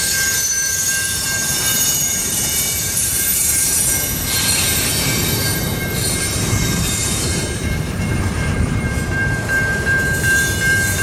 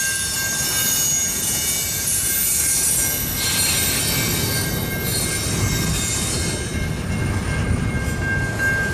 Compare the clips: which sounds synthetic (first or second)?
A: first